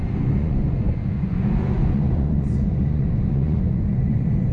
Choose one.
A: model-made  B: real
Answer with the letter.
A